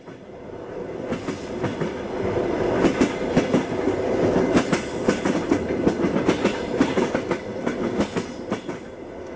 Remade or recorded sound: recorded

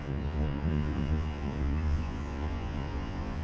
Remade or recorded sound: remade